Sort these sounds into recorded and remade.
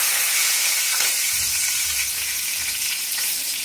remade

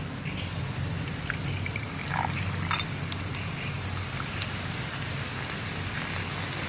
recorded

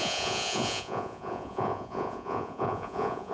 remade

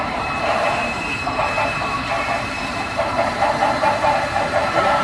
remade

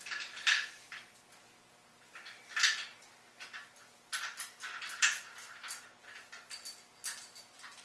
recorded